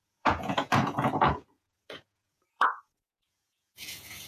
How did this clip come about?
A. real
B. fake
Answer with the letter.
B